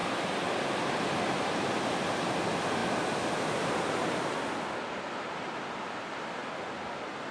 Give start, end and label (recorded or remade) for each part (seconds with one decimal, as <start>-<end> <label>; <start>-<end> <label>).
0.0-7.3 recorded